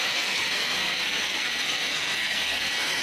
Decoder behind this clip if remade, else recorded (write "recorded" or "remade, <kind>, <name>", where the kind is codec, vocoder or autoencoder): remade, codec, SNAC